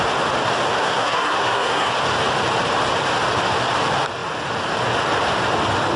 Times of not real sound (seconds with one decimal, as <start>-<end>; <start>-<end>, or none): 0.8-1.9